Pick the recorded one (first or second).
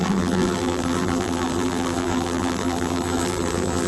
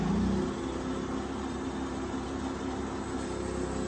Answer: second